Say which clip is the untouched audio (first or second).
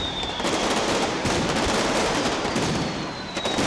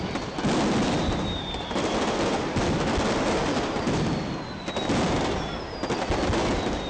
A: second